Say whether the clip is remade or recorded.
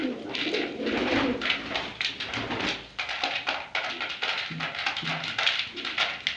recorded